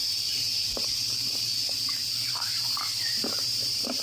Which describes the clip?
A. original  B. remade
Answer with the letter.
B